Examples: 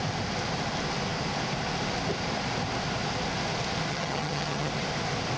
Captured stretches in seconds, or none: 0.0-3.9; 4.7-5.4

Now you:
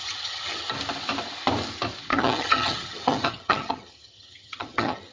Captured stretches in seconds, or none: 0.7-2.1

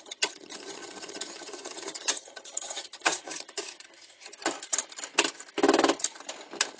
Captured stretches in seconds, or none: 4.4-6.8

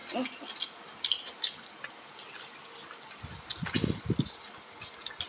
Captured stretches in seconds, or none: 0.0-5.3

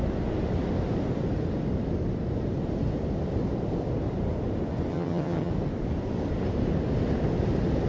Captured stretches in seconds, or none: 0.0-4.9; 5.5-7.9